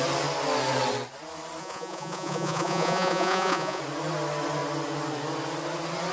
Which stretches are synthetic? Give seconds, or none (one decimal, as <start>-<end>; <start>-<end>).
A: 1.6-3.8